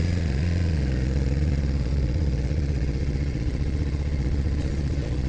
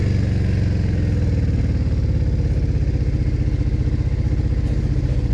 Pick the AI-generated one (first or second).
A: first